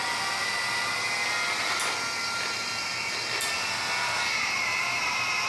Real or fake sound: real